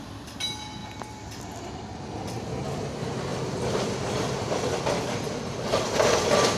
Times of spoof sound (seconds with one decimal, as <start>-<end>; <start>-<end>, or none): 3.3-4.7